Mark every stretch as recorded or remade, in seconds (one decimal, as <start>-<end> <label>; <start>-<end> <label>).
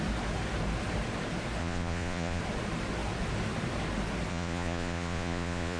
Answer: 0.0-1.6 recorded; 1.6-2.4 remade; 2.4-4.3 recorded; 4.3-5.8 remade